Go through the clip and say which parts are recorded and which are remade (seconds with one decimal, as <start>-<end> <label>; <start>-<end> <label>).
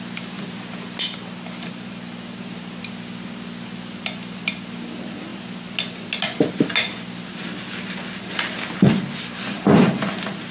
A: 0.0-10.5 recorded